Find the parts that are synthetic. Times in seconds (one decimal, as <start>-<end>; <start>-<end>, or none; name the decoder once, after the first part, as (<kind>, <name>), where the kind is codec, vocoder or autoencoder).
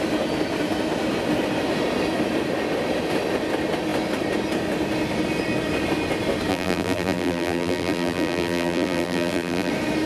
6.5-9.7 (vocoder, BigVGAN v2)